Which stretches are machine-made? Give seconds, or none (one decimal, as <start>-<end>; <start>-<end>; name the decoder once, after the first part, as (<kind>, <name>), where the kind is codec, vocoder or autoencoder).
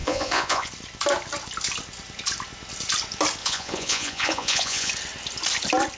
0.0-0.7 (vocoder, Vocos); 3.4-4.9